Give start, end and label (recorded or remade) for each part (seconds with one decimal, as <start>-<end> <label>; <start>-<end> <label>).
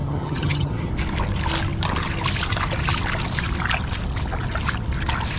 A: 0.0-0.9 remade; 0.9-5.4 recorded